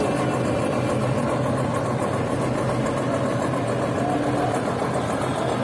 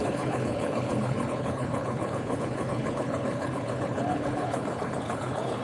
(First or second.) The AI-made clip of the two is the second